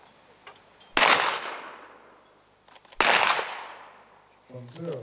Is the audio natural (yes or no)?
yes